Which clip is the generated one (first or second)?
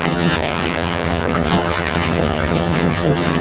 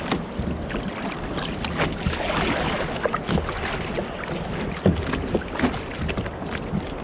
first